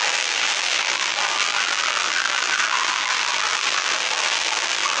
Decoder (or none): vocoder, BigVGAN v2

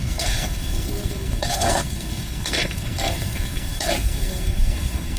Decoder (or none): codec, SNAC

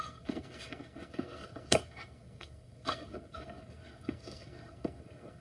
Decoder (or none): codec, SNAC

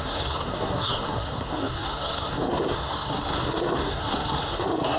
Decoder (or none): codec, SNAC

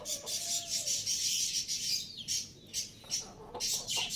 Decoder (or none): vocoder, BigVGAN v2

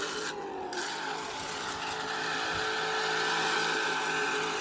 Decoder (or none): none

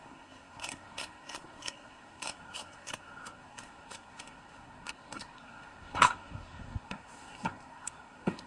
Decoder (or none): codec, SNAC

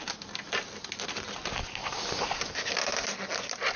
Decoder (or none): none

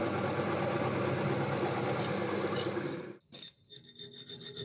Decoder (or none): none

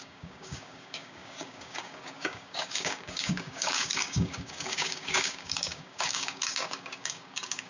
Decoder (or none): codec, DAC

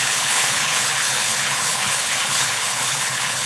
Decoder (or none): codec, HILCodec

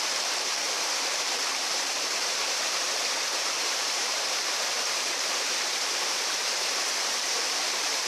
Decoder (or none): vocoder, BigVGAN v2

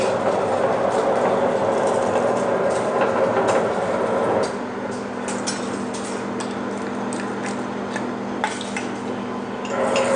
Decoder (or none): none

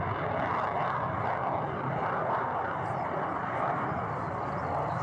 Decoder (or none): none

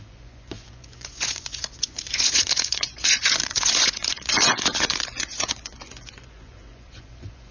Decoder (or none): vocoder, Vocos